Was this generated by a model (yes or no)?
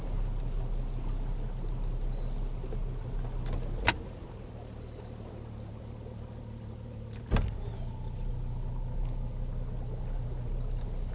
no